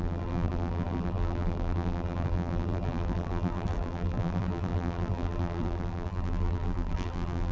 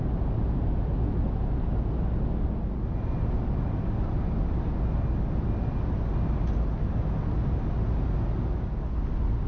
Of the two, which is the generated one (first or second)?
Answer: first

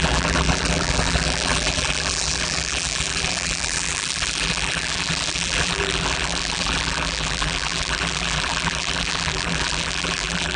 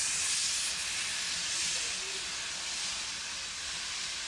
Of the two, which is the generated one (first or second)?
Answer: first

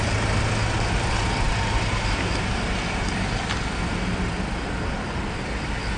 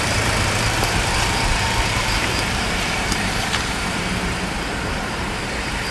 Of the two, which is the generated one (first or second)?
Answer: second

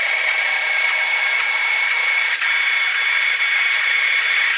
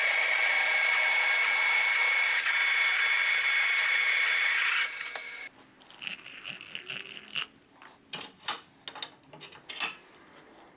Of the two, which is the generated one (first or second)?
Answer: first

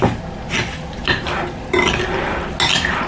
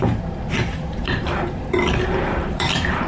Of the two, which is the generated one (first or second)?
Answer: second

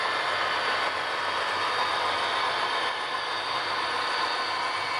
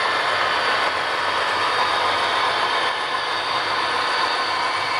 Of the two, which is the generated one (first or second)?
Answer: second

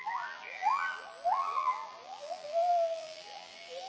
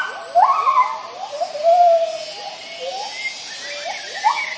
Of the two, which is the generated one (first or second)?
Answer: first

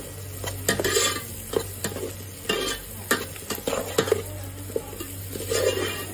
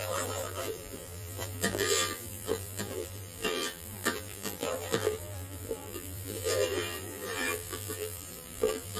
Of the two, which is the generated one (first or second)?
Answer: second